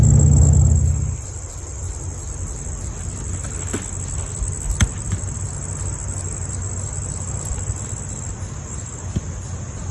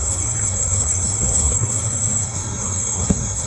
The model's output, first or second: second